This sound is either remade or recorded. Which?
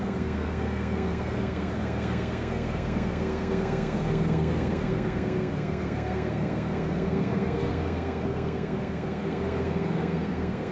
remade